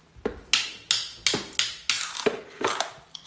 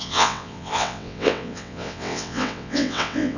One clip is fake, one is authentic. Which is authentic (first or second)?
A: first